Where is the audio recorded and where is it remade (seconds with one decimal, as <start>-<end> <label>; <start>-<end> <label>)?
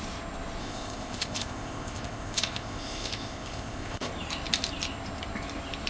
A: 0.0-0.6 recorded; 0.6-4.1 remade; 4.1-5.9 recorded